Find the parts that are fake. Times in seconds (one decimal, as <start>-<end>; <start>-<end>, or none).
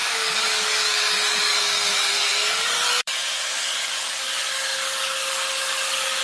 0.0-6.2